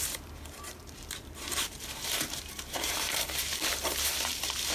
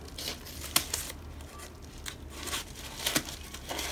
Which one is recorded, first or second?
second